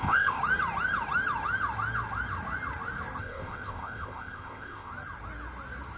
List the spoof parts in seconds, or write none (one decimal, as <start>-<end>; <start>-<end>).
0.0-0.4; 3.2-4.9